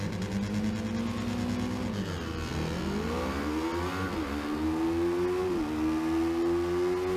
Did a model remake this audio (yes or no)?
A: no